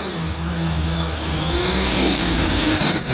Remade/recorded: remade